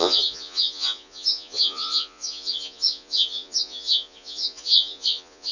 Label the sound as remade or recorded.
remade